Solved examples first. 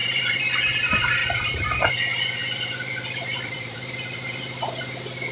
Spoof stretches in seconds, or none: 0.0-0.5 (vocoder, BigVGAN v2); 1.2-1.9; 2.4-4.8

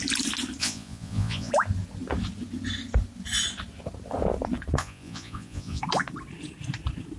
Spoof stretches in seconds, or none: 0.6-1.5 (vocoder, Vocos); 4.8-5.8

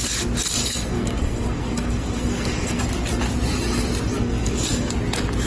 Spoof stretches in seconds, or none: 0.6-2.8 (codec, SNAC); 4.1-4.9

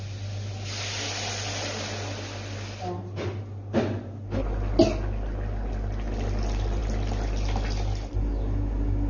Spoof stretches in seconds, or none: none

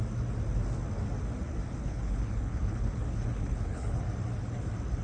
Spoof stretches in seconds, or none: 1.8-4.0 (codec, HILCodec)